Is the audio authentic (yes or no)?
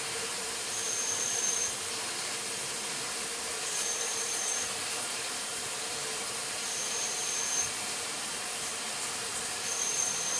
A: no